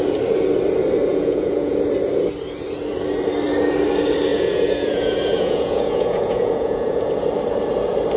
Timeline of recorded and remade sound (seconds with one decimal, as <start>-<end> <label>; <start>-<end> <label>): 0.0-1.1 recorded; 1.1-1.7 remade; 1.7-4.3 recorded; 4.3-7.1 remade; 7.1-8.2 recorded